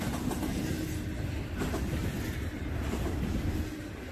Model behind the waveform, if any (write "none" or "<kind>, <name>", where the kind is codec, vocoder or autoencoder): none